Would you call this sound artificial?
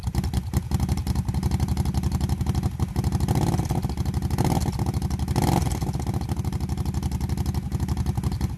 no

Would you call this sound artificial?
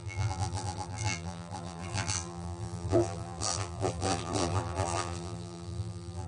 yes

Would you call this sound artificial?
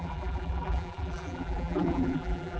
yes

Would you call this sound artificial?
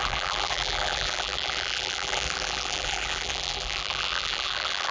yes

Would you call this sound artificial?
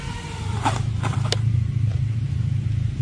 yes